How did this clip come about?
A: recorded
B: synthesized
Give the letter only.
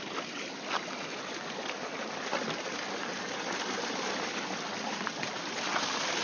A